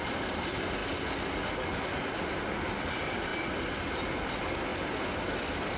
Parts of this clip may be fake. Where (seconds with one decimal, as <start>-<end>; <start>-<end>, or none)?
none